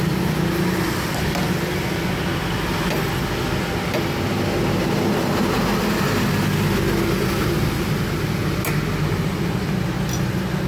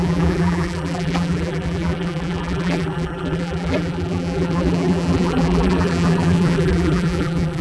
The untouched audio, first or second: first